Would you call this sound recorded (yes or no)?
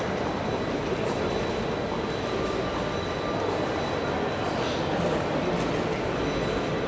yes